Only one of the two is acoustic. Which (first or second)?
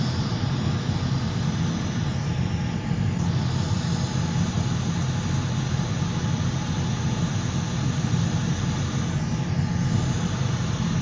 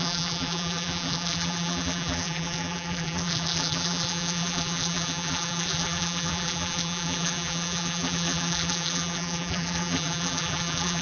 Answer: first